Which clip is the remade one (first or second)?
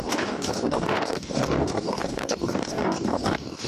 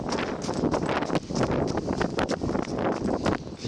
first